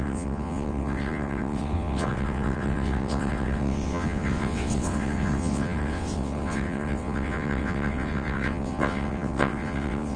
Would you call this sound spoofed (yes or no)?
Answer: yes